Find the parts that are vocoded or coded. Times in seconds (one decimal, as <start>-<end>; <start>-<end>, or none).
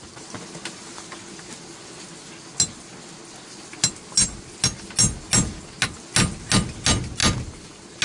none